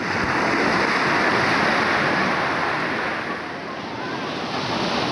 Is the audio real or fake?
real